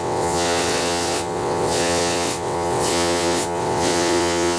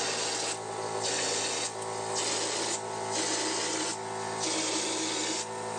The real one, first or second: second